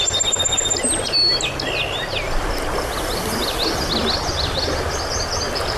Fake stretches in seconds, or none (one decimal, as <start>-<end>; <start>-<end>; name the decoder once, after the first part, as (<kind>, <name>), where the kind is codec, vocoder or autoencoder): none

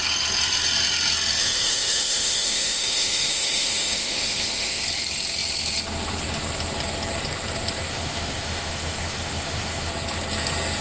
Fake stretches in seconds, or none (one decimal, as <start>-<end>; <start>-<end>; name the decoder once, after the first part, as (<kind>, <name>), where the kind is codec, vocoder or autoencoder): 1.4-4.8 (autoencoder, DAC-VAE); 7.9-9.9

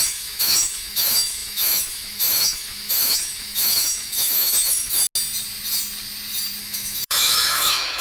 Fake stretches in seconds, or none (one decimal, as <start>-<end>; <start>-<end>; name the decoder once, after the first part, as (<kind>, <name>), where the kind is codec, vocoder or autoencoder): 0.0-5.0 (autoencoder, DAC-VAE); 6.6-8.0

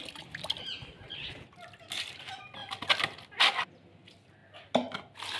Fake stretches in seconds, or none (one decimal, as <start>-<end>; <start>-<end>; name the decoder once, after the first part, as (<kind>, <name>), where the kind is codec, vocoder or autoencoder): none

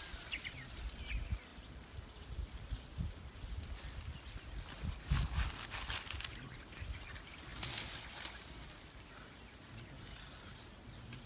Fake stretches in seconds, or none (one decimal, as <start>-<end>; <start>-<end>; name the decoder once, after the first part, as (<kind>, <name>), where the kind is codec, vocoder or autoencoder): 0.0-7.5 (vocoder, BigVGAN v2); 10.0-11.3

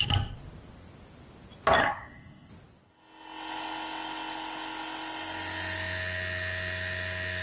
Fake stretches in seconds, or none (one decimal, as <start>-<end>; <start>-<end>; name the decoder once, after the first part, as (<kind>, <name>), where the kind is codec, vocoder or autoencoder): 1.8-2.5 (codec, SNAC)